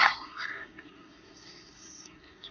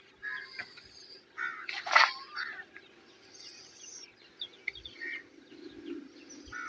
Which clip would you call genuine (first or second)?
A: second